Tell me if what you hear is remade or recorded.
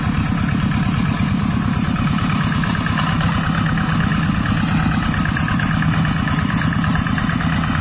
recorded